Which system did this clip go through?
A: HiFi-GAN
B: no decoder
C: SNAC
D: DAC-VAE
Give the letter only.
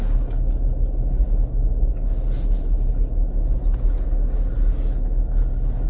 B